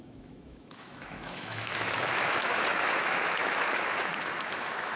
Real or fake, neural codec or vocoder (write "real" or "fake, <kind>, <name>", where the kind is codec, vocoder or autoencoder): fake, autoencoder, DAC-VAE